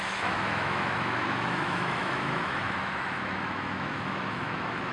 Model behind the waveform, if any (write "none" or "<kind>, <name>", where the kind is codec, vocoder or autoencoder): autoencoder, DAC-VAE